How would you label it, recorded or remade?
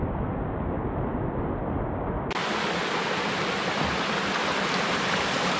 recorded